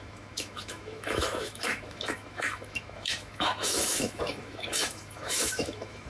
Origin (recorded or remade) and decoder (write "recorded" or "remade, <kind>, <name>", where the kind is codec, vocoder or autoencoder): remade, autoencoder, DAC-VAE